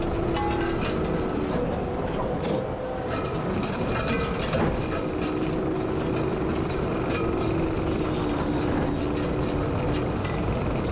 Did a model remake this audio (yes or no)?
no